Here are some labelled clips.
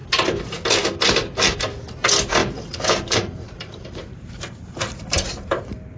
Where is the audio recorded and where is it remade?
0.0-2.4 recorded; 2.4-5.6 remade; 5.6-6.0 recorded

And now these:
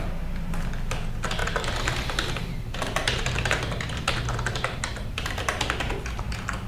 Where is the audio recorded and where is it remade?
0.0-1.4 recorded; 1.4-5.4 remade; 5.4-6.7 recorded

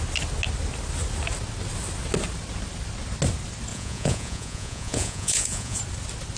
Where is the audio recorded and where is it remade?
0.0-3.7 recorded; 3.7-5.8 remade; 5.8-6.4 recorded

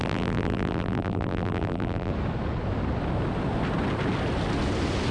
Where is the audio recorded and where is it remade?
0.0-2.1 remade; 2.1-5.1 recorded

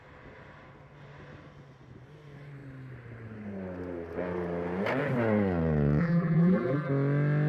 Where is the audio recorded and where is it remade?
0.0-6.0 recorded; 6.0-6.9 remade; 6.9-7.5 recorded

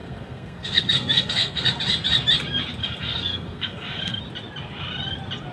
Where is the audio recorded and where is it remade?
0.0-1.8 remade; 1.8-2.8 recorded; 2.8-4.2 remade; 4.2-5.5 recorded